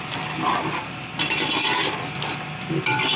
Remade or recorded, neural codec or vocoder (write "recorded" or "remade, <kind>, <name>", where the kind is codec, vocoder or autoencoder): recorded